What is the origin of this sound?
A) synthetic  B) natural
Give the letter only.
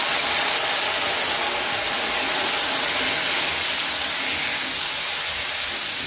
B